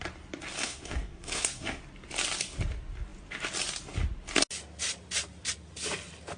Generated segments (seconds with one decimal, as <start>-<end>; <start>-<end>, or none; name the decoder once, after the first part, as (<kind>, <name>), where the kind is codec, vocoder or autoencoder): 0.6-1.8 (codec, SNAC)